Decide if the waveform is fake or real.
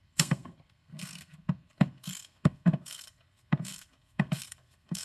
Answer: fake